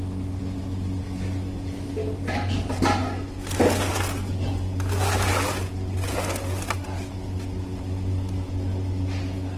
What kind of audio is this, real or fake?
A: real